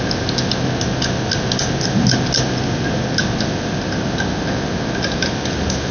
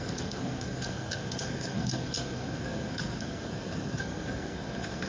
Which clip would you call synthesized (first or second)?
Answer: second